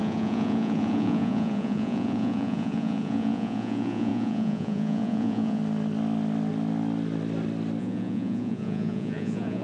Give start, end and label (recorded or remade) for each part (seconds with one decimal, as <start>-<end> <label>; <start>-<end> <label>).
0.0-5.6 remade; 5.6-7.8 recorded; 7.8-9.6 remade